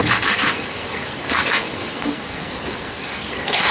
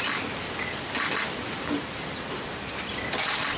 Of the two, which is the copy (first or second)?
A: first